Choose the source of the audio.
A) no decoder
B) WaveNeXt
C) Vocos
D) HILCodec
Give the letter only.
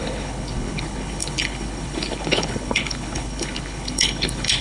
D